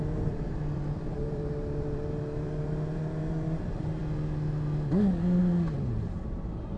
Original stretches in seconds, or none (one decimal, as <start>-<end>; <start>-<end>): 4.0-5.4